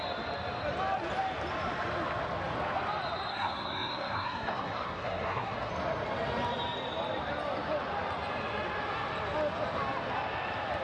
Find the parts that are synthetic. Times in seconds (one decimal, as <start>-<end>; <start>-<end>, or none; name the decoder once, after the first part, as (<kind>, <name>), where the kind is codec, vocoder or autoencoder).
3.3-5.7 (codec, SNAC)